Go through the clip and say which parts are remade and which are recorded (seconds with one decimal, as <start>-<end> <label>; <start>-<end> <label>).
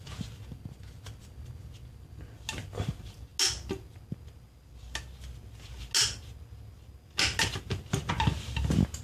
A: 0.0-9.0 recorded